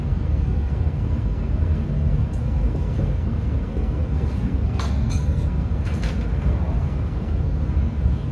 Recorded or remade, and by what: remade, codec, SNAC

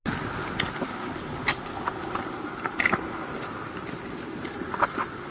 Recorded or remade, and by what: recorded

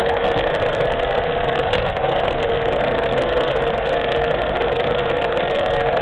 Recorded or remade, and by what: remade, codec, SNAC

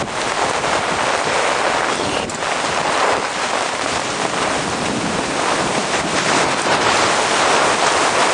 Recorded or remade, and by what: recorded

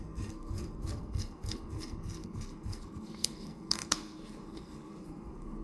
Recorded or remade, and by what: remade, codec, SNAC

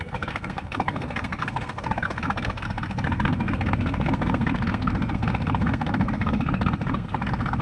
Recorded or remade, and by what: remade, codec, SNAC